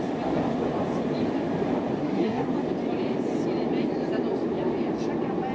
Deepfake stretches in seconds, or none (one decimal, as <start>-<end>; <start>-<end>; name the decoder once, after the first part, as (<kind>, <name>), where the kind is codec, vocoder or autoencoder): 2.0-2.5 (codec, SNAC)